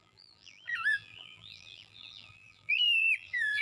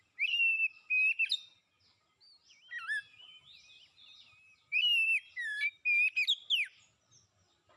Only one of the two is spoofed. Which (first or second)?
first